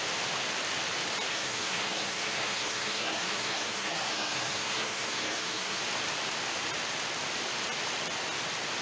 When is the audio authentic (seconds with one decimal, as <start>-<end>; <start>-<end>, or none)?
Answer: 0.0-1.3; 5.8-8.8